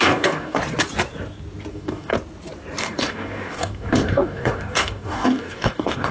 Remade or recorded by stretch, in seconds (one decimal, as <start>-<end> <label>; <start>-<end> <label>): 0.0-0.6 remade; 0.6-1.7 recorded; 1.7-2.1 remade; 2.1-2.8 recorded; 2.8-6.1 remade

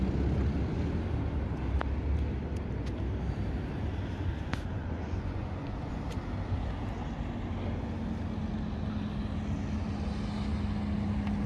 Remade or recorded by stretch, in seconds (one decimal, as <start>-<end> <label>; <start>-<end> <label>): 0.0-4.3 recorded; 4.3-6.0 remade; 6.0-11.5 recorded

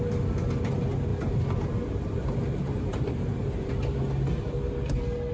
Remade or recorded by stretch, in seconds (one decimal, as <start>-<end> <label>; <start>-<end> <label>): 0.0-1.1 recorded; 1.1-3.7 remade; 3.7-5.3 recorded

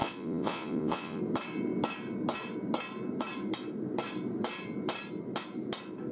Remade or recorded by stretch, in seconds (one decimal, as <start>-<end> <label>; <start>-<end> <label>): 0.0-1.2 remade; 1.2-6.1 recorded

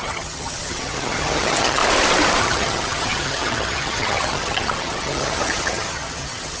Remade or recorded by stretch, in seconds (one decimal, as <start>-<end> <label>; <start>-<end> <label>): 0.0-1.8 remade; 1.8-2.4 recorded; 2.4-6.6 remade

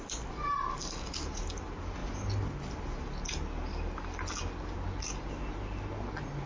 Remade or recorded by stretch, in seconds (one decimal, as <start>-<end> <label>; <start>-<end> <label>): 0.0-6.5 recorded

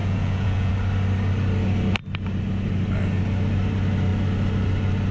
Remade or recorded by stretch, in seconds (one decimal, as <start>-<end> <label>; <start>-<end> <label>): 0.0-0.7 remade; 0.7-5.1 recorded

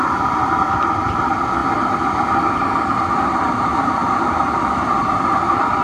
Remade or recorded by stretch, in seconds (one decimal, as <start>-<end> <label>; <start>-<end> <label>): 0.0-4.0 recorded; 4.0-4.6 remade; 4.6-5.8 recorded